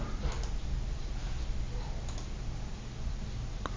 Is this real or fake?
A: real